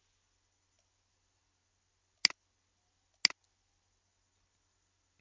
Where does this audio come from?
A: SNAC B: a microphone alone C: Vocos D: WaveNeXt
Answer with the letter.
B